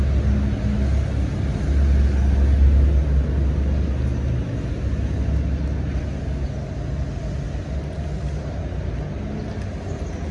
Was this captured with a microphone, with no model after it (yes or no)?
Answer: yes